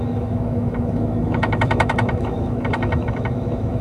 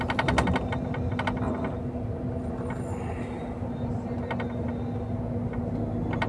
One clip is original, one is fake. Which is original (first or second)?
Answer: second